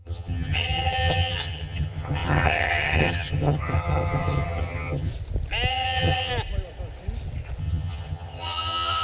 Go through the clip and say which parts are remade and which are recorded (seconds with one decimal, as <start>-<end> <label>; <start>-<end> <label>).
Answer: 0.0-5.1 remade; 5.1-5.7 recorded; 5.7-6.3 remade; 6.3-7.6 recorded; 7.6-9.0 remade